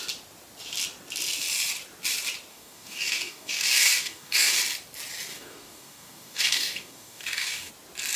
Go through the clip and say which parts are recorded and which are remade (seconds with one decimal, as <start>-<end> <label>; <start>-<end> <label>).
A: 0.0-2.5 recorded; 2.5-4.6 remade; 4.6-5.3 recorded; 5.3-7.7 remade; 7.7-8.2 recorded

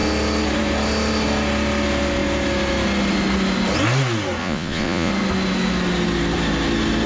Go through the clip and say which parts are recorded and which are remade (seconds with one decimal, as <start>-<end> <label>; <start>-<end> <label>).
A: 0.0-4.4 recorded; 4.4-5.1 remade; 5.1-7.1 recorded

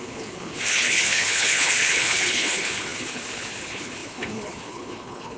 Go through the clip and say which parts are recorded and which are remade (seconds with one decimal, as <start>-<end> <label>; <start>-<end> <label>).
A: 0.0-5.4 remade

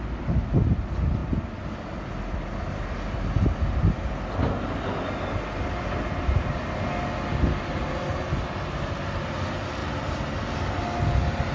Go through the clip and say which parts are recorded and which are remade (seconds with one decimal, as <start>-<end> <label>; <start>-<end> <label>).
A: 0.0-9.8 recorded; 9.8-10.4 remade; 10.4-11.5 recorded

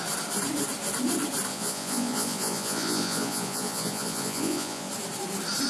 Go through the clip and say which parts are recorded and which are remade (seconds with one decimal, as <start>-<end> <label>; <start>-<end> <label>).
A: 0.0-1.5 recorded; 1.5-4.9 remade; 4.9-5.7 recorded

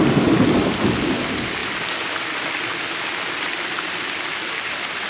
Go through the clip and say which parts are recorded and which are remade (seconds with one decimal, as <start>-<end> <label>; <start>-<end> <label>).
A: 0.0-5.1 recorded